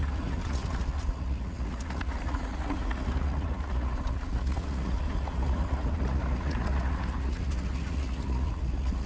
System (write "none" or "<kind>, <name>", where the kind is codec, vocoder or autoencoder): vocoder, Vocos